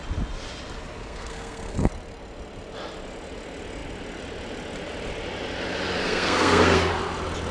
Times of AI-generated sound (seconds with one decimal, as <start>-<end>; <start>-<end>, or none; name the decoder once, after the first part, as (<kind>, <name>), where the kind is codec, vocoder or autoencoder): 1.0-1.9 (codec, SNAC); 6.0-6.9